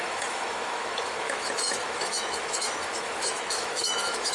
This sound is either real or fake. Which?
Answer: fake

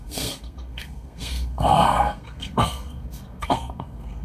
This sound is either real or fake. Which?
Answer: fake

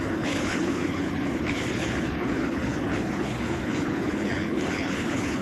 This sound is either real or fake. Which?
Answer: fake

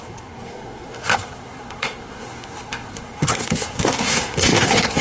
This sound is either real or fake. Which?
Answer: fake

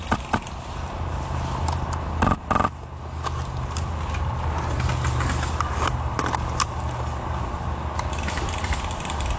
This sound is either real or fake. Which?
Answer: real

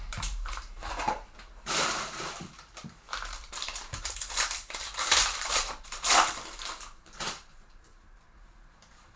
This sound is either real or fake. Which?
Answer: fake